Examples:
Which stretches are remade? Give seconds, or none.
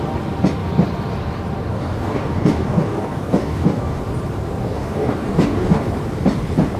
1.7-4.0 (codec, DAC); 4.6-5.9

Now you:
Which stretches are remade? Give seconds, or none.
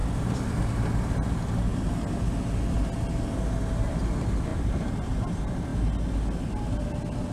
0.0-0.6 (vocoder, BigVGAN v2); 4.5-5.3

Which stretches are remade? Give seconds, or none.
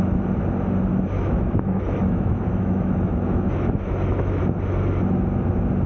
0.9-4.4 (autoencoder, DAC-VAE)